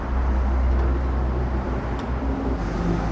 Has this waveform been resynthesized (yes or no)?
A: no